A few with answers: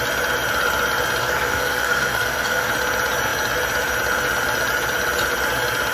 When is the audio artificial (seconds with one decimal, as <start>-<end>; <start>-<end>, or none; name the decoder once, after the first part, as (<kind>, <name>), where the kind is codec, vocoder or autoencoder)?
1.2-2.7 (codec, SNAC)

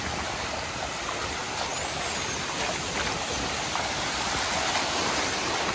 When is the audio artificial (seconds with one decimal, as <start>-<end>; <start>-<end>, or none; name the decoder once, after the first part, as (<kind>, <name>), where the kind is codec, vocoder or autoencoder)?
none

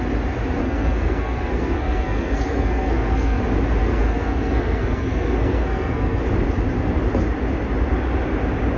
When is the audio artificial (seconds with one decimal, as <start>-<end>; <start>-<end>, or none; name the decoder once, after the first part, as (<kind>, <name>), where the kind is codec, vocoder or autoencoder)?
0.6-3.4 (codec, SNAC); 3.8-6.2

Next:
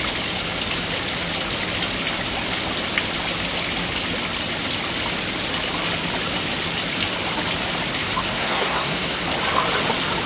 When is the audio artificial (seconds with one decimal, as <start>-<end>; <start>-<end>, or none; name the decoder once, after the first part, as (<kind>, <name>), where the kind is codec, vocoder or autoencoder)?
8.3-9.2 (codec, SNAC)